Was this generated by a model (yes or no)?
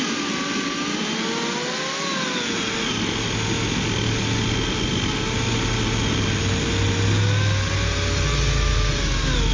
no